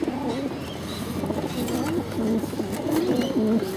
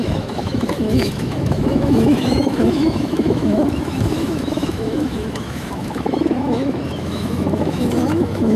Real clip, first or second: first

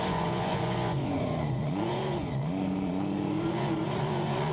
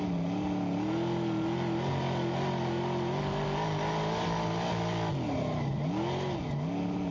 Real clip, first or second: second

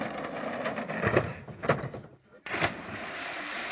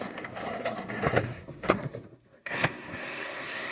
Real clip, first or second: first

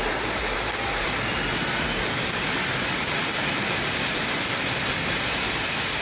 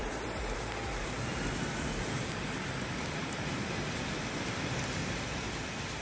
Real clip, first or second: first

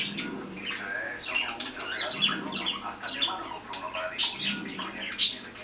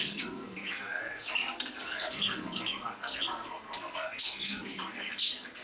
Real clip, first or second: first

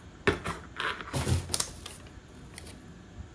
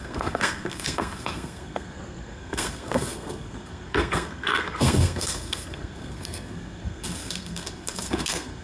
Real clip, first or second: first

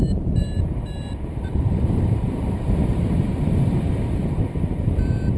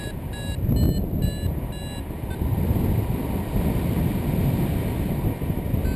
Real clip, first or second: second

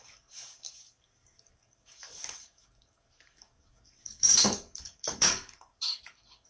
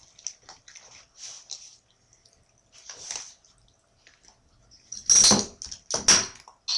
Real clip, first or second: second